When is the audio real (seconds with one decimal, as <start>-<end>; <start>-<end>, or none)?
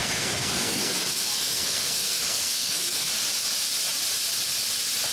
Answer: 3.1-5.1